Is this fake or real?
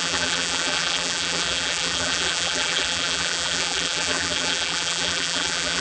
fake